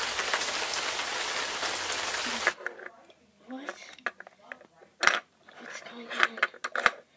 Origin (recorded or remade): recorded